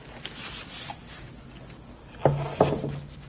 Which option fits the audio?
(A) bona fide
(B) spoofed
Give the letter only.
A